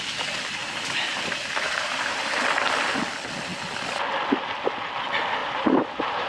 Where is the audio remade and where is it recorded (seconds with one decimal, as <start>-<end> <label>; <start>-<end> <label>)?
0.0-0.6 recorded; 0.6-2.3 remade; 2.3-5.4 recorded; 5.4-6.3 remade